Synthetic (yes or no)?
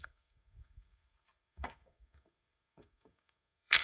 yes